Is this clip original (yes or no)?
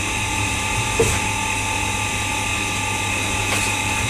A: yes